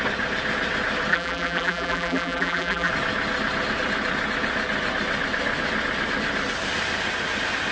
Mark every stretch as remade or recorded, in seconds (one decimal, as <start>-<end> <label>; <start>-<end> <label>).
0.0-1.1 recorded; 1.1-2.9 remade; 2.9-7.7 recorded